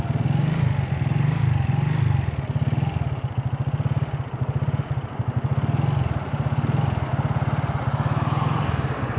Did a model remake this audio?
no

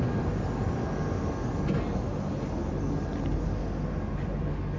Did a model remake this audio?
no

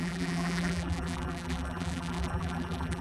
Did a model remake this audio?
yes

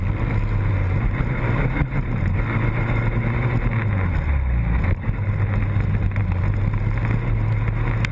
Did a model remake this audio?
no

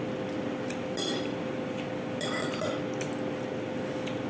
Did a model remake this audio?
no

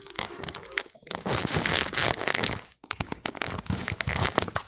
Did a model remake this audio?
yes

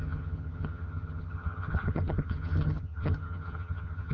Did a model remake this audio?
yes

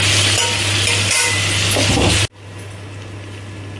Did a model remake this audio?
no